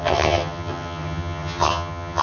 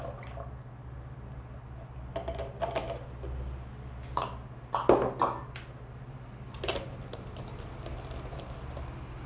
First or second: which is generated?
first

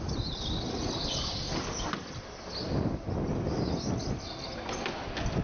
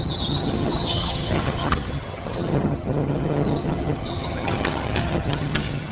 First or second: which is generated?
second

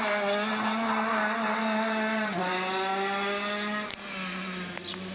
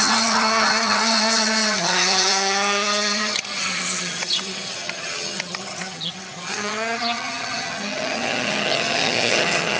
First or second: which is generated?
second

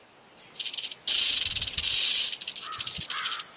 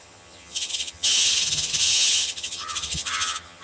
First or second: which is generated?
second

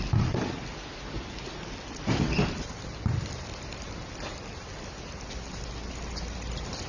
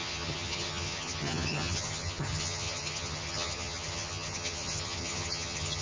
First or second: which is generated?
second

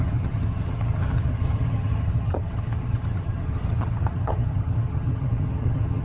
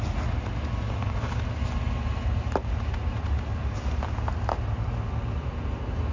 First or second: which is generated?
first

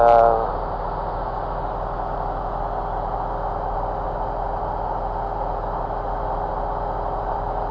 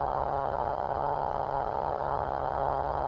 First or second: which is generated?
second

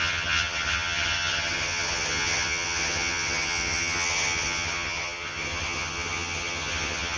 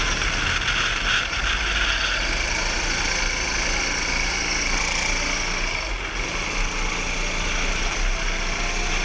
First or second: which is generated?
first